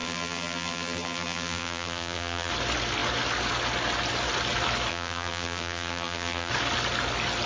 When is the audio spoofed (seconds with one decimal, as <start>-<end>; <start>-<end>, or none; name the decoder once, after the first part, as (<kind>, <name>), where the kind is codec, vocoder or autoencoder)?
0.0-2.5 (vocoder, BigVGAN v2); 4.9-6.5